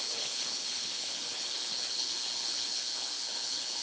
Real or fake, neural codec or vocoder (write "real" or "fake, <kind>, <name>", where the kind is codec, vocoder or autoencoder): fake, codec, HILCodec